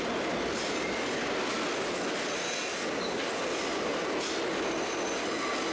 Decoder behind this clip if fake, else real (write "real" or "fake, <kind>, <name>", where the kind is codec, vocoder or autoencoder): real